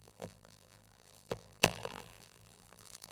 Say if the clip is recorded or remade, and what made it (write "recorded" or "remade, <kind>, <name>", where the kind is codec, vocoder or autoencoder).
remade, vocoder, BigVGAN v2